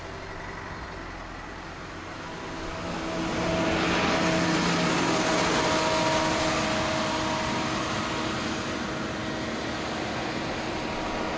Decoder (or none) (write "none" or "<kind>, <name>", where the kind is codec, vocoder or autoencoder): none